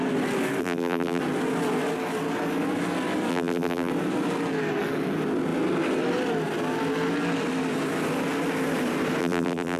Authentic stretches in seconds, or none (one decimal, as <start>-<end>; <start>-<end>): 0.0-0.6; 1.2-3.3; 3.9-9.2